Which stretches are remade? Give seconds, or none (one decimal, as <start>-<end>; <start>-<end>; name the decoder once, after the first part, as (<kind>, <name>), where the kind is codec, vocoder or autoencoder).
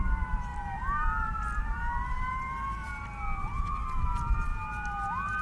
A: 0.0-2.9 (vocoder, BigVGAN v2); 3.7-4.5